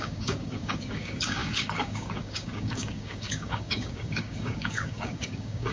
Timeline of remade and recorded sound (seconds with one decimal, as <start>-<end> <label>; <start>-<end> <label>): 0.0-5.7 remade